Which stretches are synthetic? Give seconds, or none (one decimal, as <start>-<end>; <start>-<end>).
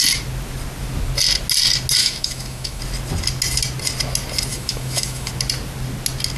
2.0-2.8; 4.5-5.3